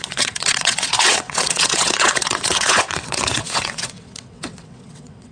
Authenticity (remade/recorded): remade